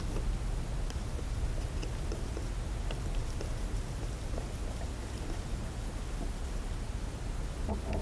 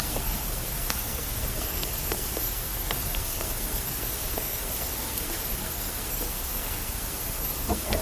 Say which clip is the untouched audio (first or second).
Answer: first